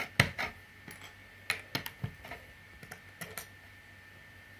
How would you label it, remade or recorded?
recorded